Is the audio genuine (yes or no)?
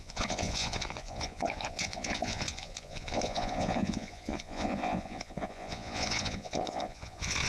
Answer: no